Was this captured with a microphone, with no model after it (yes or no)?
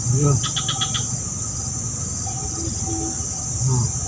yes